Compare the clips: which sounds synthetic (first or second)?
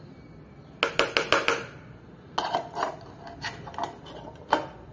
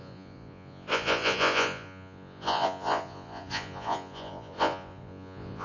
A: second